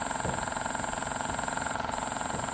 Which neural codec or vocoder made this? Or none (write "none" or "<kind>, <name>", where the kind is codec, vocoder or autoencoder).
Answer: vocoder, Vocos